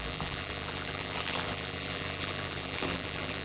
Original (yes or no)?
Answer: no